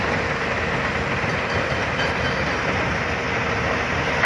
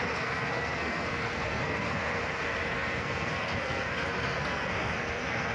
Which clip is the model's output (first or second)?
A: second